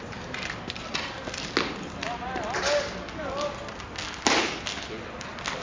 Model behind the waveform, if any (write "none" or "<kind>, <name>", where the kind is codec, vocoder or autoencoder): none